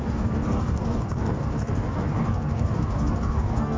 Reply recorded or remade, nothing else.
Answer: remade